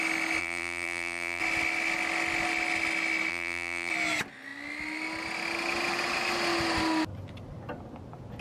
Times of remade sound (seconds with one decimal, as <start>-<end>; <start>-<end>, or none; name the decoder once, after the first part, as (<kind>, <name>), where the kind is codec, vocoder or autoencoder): 0.4-1.4 (vocoder, BigVGAN v2); 3.3-3.9